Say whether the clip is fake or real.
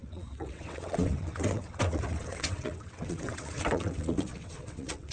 fake